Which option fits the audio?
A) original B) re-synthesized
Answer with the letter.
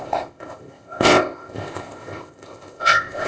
B